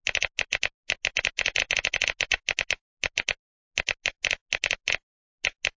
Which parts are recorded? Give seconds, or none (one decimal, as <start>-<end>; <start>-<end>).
0.0-5.8